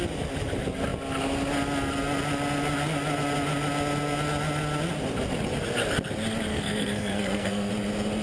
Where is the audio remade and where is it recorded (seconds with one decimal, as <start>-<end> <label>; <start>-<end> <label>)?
0.0-6.5 recorded; 6.5-7.7 remade; 7.7-8.2 recorded